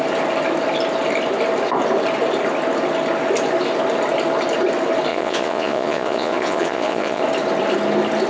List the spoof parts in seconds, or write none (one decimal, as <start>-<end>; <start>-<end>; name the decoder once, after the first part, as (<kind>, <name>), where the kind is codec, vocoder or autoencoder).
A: 5.1-7.2 (vocoder, Vocos)